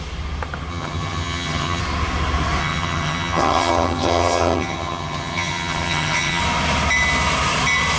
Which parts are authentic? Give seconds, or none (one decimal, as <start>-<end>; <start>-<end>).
0.0-0.7; 1.8-2.6; 6.4-8.0